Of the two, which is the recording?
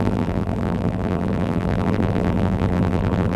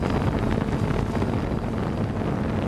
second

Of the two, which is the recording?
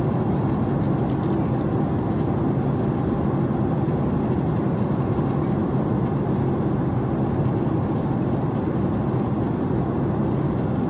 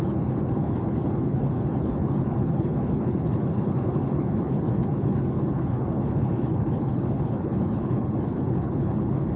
first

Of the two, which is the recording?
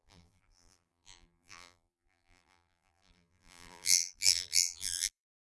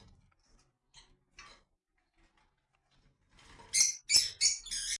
second